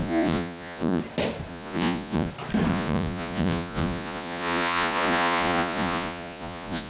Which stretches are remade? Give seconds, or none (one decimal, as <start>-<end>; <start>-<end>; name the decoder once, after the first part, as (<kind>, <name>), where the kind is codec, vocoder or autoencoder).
0.0-1.0 (vocoder, Vocos); 1.5-2.3; 2.7-6.9